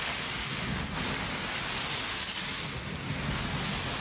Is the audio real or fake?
real